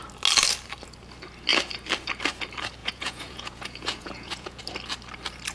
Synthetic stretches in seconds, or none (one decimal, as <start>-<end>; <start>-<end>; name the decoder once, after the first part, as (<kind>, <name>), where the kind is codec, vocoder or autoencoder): 2.8-4.6 (vocoder, Vocos)